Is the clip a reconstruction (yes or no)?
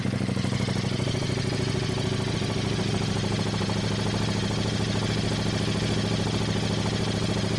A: no